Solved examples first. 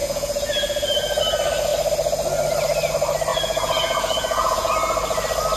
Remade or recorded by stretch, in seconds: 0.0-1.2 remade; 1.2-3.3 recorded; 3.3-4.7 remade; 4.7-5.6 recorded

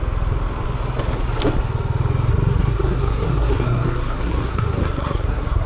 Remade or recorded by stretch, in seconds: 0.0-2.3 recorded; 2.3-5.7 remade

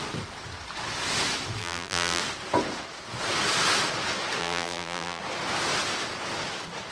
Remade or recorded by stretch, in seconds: 0.0-1.6 recorded; 1.6-2.2 remade; 2.2-4.4 recorded; 4.4-5.2 remade; 5.2-6.9 recorded

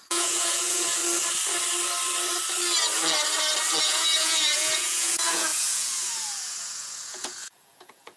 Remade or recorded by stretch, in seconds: 0.0-1.0 remade; 1.0-3.8 recorded; 3.8-8.2 remade